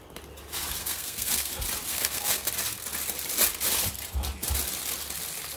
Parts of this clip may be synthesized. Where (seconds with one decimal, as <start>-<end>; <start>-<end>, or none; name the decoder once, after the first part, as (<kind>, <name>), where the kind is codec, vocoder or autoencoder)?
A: 0.8-1.5 (codec, SNAC); 1.9-2.5